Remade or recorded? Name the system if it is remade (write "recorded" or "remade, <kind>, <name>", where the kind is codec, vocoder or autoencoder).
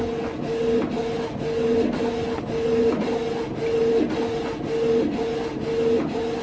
recorded